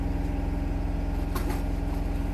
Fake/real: real